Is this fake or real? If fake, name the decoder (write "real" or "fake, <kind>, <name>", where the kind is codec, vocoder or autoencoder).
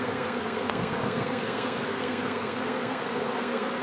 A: fake, codec, SNAC